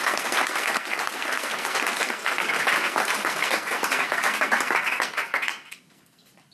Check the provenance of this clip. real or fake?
fake